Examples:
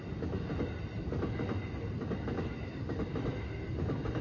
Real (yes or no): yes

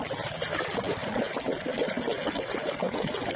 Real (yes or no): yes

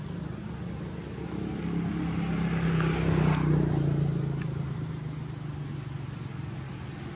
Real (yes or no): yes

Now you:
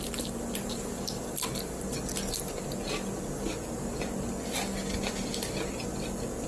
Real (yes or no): yes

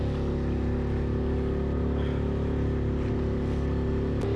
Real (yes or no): yes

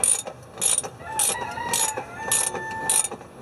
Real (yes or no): yes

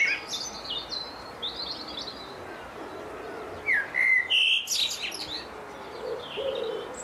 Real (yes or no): yes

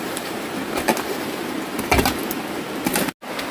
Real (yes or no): yes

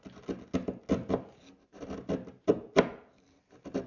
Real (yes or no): yes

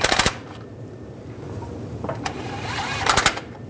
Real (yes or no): no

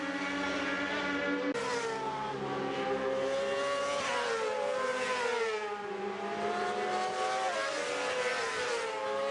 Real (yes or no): yes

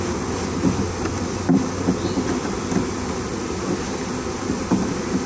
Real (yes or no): yes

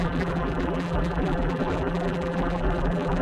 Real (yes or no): no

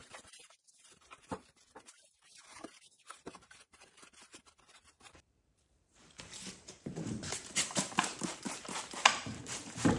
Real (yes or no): no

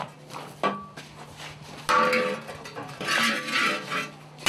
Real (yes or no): yes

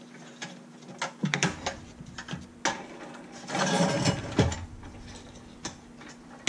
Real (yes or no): yes